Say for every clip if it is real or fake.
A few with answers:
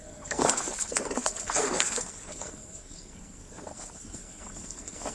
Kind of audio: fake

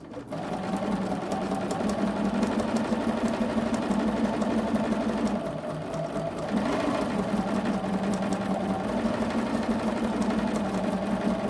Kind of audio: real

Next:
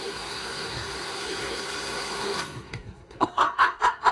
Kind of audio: fake